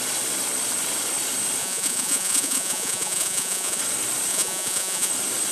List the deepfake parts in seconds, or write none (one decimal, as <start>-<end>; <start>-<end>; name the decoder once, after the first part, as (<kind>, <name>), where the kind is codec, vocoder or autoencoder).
1.6-3.8 (vocoder, Vocos); 4.3-5.1